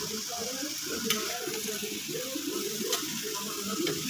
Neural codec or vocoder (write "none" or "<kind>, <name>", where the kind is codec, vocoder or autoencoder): none